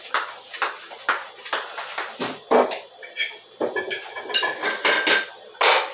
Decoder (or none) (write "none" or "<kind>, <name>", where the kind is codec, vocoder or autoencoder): none